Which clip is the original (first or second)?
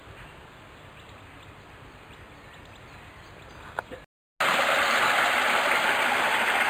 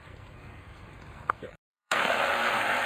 first